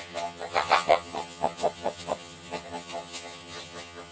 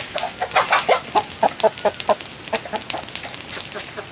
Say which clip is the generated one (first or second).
first